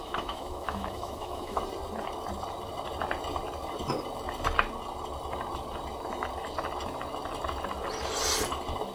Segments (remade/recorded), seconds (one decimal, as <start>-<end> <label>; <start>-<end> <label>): 0.0-1.6 remade; 1.6-8.9 recorded